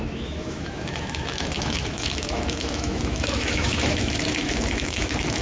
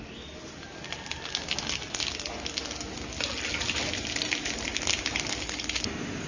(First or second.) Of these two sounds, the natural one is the second